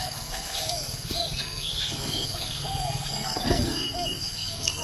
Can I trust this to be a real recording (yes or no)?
no